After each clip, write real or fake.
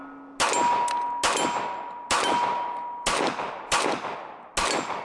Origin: real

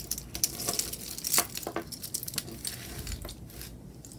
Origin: real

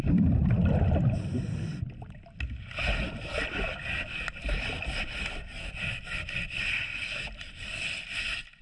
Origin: real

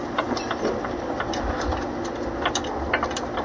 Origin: real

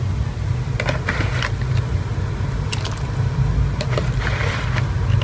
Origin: real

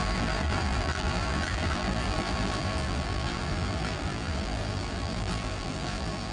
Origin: fake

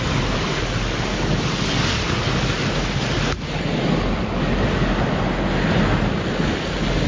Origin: real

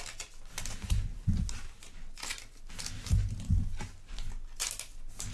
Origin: real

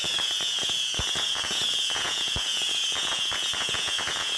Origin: fake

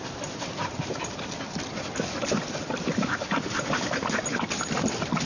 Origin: real